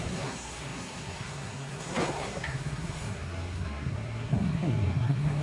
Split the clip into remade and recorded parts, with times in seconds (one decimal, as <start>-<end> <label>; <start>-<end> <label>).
0.0-5.4 remade